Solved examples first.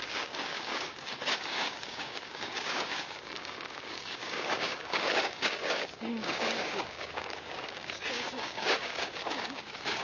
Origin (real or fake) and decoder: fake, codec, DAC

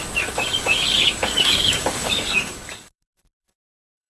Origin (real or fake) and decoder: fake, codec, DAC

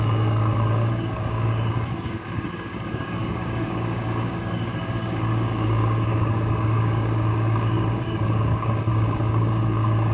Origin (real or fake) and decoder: fake, codec, DAC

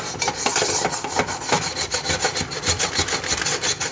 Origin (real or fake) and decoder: real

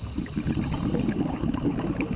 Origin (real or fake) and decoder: real